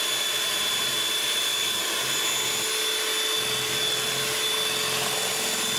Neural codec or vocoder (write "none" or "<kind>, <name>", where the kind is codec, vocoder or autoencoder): none